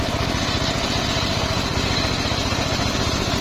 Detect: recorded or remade recorded